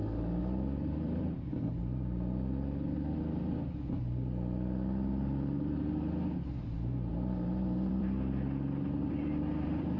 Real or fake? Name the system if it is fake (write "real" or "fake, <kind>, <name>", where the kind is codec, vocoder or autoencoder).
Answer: fake, vocoder, BigVGAN v2